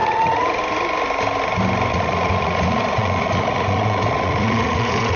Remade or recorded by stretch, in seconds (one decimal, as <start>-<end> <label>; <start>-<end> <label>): 0.0-0.6 remade; 0.6-1.9 recorded; 1.9-5.2 remade